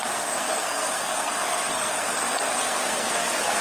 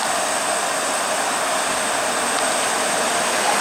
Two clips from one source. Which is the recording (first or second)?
second